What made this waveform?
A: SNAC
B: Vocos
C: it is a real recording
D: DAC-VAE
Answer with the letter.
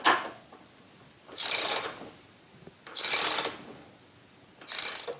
C